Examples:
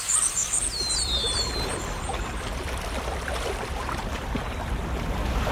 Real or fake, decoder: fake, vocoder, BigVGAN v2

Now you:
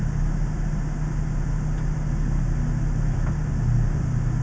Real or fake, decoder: real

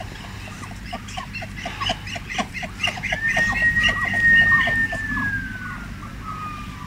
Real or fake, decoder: real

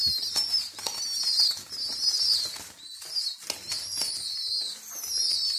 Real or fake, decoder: real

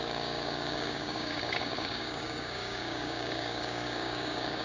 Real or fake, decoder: fake, codec, DAC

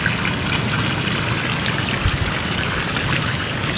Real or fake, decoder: real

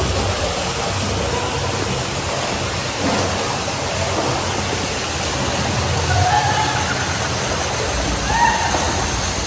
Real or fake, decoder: real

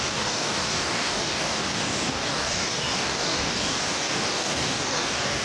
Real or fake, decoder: fake, codec, DAC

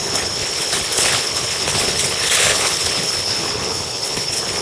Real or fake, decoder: fake, codec, HILCodec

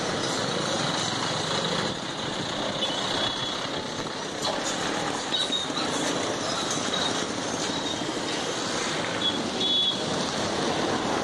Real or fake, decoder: real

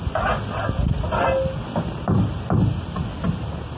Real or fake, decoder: real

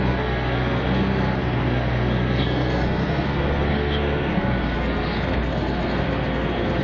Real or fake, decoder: fake, codec, SNAC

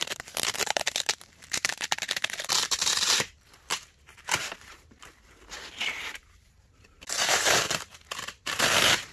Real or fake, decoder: fake, vocoder, BigVGAN v2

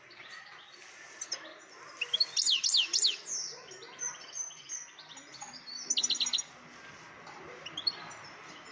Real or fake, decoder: real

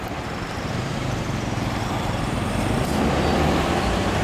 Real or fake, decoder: fake, vocoder, BigVGAN v2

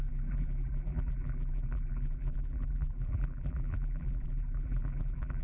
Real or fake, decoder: fake, vocoder, BigVGAN v2